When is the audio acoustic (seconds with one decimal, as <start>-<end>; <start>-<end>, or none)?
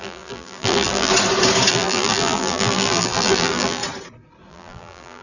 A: 1.1-1.7; 3.8-4.5